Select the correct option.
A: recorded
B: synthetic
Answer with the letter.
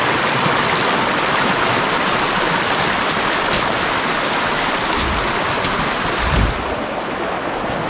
A